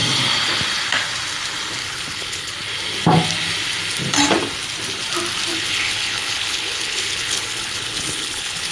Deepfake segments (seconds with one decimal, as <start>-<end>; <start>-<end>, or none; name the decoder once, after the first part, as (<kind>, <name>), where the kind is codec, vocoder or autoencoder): 1.8-2.5 (codec, HILCodec); 5.5-8.7